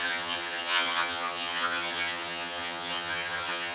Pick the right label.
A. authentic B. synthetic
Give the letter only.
B